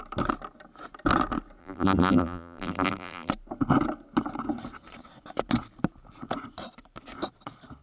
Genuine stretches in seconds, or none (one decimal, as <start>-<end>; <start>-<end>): 0.0-1.6; 3.3-7.8